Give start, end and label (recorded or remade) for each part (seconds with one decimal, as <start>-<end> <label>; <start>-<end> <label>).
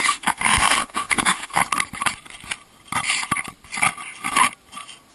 0.0-1.6 remade; 1.6-5.1 recorded